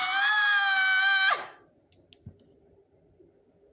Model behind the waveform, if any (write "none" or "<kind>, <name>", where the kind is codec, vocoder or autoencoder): none